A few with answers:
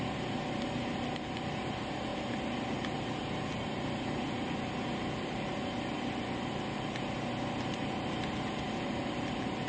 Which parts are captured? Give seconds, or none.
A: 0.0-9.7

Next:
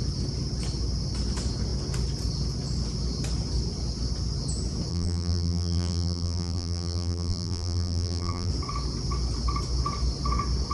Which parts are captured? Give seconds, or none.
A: 0.0-4.9; 8.5-10.7